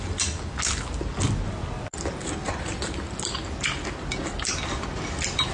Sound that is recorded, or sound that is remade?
recorded